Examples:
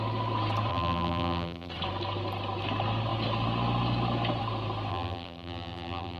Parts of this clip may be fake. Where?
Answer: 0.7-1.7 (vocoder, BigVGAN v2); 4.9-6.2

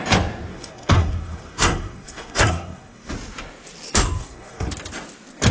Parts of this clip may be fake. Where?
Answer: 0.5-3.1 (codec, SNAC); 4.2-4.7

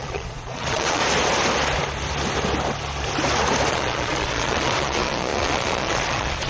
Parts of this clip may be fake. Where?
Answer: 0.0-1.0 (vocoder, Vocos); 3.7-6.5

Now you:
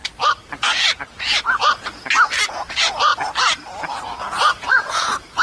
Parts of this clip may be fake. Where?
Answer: 2.5-3.1 (vocoder, Vocos); 4.2-5.4